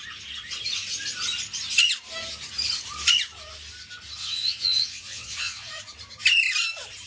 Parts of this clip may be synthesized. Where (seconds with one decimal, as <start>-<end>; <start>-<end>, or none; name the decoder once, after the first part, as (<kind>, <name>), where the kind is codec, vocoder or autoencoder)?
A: 4.2-5.8 (vocoder, WaveNeXt)